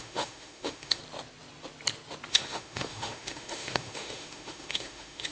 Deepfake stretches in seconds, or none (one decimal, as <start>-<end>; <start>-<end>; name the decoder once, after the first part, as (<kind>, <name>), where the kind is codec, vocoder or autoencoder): 0.0-1.0 (autoencoder, DAC-VAE); 2.3-5.3